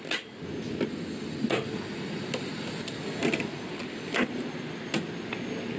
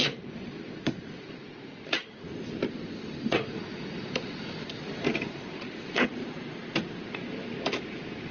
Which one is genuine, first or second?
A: first